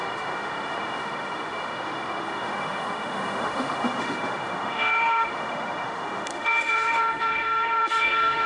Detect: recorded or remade remade